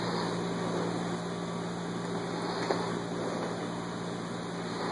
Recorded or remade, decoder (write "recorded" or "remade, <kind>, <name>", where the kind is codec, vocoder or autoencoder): recorded